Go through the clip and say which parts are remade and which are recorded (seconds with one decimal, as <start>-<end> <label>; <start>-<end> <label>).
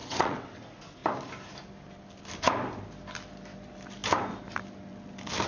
0.0-0.6 remade; 0.6-5.5 recorded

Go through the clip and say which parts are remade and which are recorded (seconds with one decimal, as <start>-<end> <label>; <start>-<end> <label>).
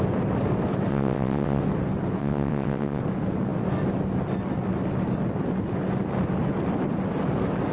0.0-0.9 recorded; 0.9-1.6 remade; 1.6-2.2 recorded; 2.2-3.0 remade; 3.0-7.7 recorded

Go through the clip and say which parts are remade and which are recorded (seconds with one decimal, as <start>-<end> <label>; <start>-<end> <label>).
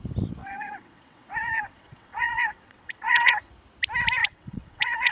0.0-0.4 recorded; 0.4-3.5 remade; 3.5-4.2 recorded; 4.2-5.1 remade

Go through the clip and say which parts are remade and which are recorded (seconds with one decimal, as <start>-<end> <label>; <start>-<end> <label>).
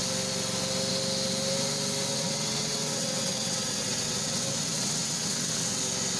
0.0-2.1 recorded; 2.1-5.8 remade; 5.8-6.2 recorded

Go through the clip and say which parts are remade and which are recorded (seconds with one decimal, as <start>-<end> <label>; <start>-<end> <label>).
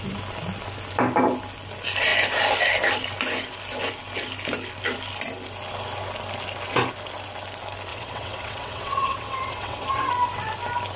0.0-7.9 recorded; 7.9-10.1 remade; 10.1-11.0 recorded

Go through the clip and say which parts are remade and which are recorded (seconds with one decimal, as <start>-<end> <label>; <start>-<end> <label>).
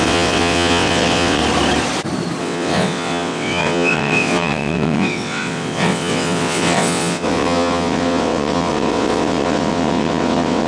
0.0-1.4 remade; 1.4-2.4 recorded; 2.4-10.7 remade